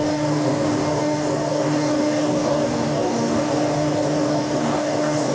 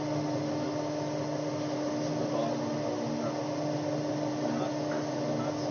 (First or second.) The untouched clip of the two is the second